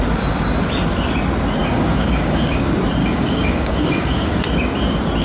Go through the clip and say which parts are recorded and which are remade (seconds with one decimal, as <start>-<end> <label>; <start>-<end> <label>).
0.0-1.6 recorded; 1.6-2.6 remade; 2.6-3.0 recorded; 3.0-4.4 remade; 4.4-5.2 recorded